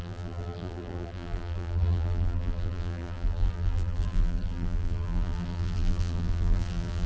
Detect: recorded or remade remade